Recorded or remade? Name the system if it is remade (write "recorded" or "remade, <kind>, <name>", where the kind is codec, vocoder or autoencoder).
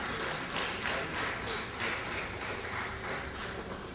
recorded